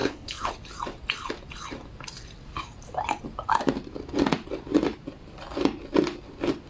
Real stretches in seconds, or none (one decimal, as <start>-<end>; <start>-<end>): 0.5-6.7